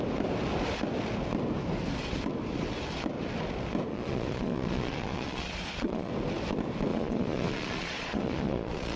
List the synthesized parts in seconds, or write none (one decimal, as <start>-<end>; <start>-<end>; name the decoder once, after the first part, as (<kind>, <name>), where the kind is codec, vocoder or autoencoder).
3.9-6.1 (vocoder, Vocos); 6.9-9.0